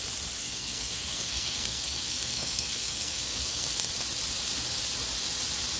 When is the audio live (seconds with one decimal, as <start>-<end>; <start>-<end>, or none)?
0.0-0.4; 3.9-5.8